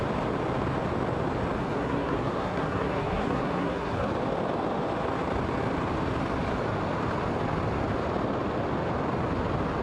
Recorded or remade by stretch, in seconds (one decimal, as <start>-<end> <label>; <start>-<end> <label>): 0.0-1.6 recorded; 1.6-4.1 remade; 4.1-9.8 recorded